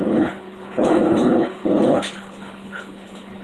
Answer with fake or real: fake